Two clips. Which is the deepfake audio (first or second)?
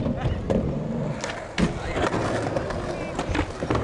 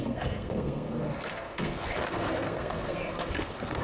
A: second